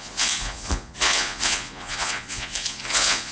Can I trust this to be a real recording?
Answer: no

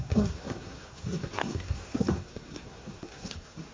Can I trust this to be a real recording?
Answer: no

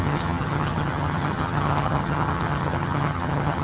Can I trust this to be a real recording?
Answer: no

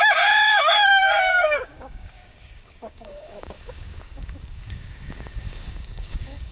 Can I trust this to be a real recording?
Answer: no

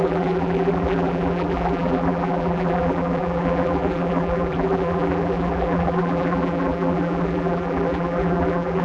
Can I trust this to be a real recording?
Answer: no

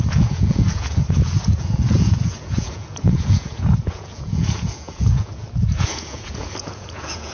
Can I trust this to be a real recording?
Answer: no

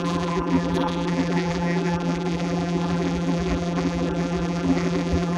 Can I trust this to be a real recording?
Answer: no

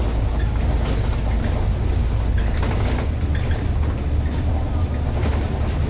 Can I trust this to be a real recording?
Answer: yes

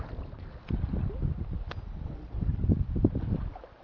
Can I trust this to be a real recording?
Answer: yes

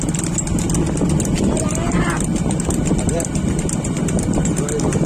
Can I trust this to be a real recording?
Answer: yes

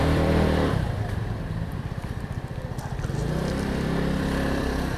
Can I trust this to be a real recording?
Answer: no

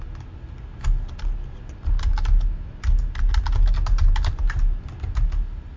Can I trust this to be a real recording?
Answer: yes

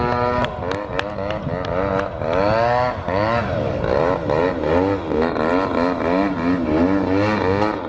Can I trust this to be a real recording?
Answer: yes